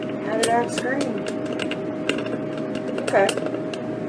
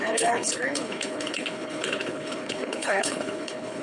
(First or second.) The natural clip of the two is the first